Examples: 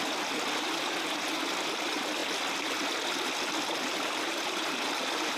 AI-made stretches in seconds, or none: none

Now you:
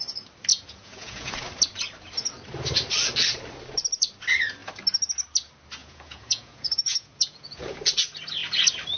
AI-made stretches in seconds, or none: 0.5-1.3; 5.8-7.8